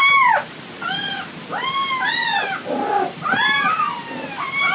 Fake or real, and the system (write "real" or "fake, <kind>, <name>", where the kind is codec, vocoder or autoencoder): fake, vocoder, BigVGAN v2